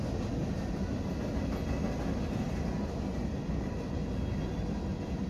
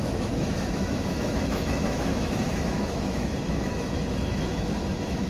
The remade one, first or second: second